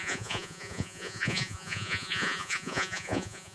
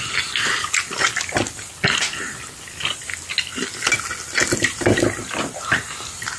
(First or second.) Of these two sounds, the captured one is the second